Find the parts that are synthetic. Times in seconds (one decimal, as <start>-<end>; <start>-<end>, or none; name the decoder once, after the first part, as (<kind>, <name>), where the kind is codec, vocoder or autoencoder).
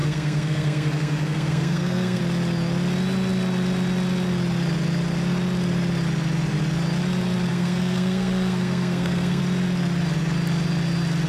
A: 0.0-2.2 (codec, SNAC); 7.5-9.4